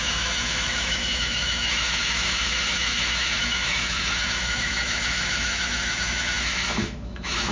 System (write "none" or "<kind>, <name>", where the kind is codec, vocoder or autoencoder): autoencoder, DAC-VAE